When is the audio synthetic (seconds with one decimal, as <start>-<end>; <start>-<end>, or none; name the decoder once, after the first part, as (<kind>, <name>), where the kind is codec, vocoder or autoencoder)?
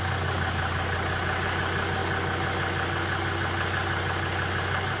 none